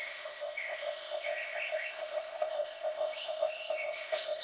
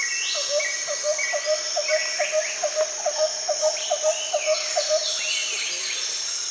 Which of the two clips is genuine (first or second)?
second